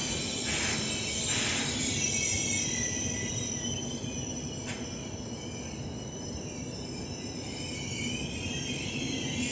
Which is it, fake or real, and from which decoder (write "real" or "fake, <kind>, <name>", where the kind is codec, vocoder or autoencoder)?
real